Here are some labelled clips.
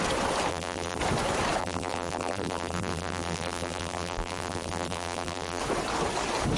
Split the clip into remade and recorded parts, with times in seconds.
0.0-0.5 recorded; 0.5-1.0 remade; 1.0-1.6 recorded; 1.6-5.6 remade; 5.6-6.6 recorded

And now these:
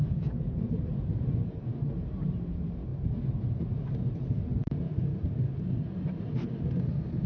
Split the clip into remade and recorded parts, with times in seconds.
0.0-1.3 remade; 1.3-7.3 recorded